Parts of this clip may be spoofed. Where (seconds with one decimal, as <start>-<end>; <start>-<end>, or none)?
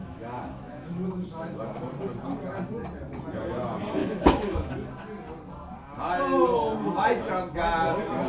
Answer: 0.0-1.6; 4.0-4.7